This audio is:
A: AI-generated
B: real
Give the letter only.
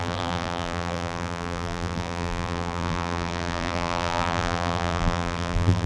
A